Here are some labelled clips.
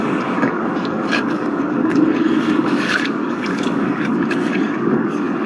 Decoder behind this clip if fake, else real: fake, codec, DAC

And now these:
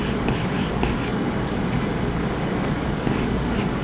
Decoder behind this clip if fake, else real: fake, codec, DAC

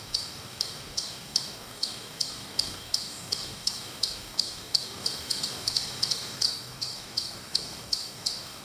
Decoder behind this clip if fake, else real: fake, codec, DAC